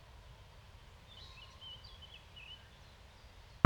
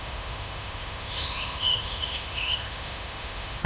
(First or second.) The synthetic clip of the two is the second